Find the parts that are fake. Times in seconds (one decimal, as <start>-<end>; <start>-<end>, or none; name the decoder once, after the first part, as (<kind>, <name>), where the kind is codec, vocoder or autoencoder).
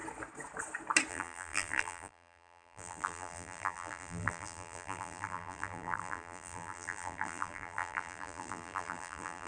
1.1-9.5 (vocoder, BigVGAN v2)